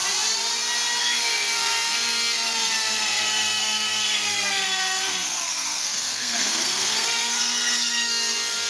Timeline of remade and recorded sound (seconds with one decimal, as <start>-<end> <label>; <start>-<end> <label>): 0.0-1.0 recorded; 1.0-8.7 remade